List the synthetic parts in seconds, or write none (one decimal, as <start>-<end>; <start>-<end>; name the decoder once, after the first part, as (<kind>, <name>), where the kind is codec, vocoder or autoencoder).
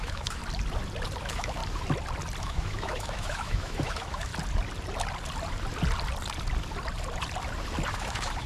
0.0-0.4 (autoencoder, DAC-VAE); 1.2-1.6; 2.4-4.3; 7.9-8.5